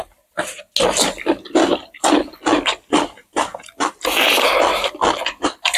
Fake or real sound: real